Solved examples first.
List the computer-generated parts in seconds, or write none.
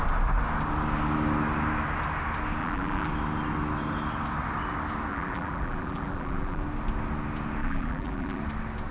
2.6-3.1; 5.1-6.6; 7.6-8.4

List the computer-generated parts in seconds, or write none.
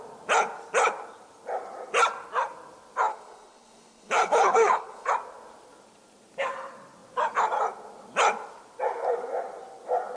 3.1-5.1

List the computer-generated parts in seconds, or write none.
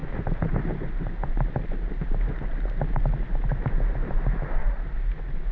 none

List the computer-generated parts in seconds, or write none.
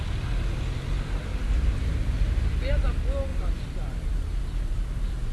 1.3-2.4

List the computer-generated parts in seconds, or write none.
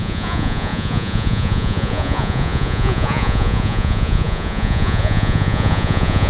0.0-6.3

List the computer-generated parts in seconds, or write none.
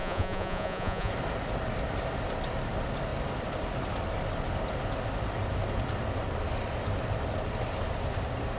0.0-1.1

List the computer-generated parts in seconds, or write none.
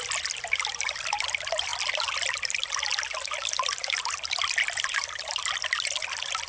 none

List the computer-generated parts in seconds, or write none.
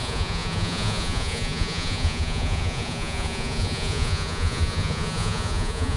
0.0-6.0